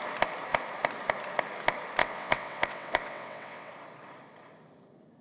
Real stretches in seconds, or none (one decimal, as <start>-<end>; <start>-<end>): 0.0-2.0; 3.7-5.2